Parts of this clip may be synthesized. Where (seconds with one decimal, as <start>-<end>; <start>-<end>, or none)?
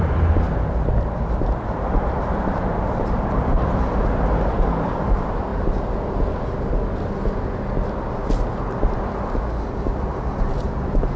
0.0-5.5; 10.4-11.2